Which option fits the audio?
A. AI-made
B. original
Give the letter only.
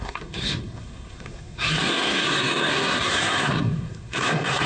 A